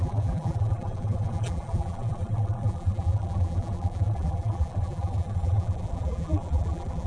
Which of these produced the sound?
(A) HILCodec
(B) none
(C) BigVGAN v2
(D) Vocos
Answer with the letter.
C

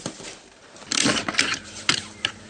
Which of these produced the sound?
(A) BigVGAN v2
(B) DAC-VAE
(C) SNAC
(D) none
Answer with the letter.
A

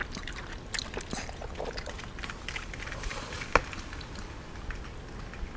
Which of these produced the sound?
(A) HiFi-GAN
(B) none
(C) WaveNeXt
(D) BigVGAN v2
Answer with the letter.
B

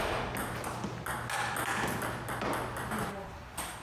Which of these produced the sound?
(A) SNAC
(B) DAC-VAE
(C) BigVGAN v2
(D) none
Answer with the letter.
D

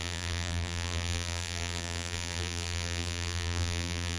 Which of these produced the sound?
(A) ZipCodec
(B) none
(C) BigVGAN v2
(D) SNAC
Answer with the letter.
C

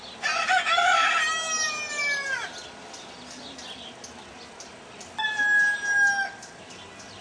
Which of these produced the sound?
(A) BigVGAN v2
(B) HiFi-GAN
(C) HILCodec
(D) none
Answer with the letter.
D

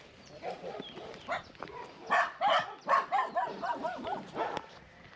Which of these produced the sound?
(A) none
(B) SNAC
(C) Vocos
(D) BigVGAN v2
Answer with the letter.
D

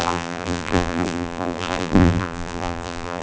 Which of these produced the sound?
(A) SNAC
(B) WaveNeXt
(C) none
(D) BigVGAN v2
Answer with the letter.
D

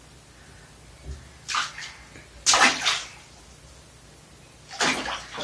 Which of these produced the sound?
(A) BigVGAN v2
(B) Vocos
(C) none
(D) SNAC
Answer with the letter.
C